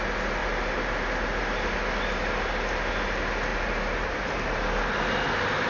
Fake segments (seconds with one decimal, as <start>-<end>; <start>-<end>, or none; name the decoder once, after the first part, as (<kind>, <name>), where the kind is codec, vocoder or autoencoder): 0.4-1.4 (vocoder, BigVGAN v2); 3.5-4.6